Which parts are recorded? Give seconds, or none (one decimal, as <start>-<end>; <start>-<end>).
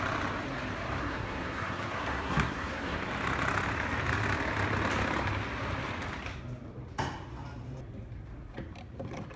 0.0-1.0; 3.0-9.4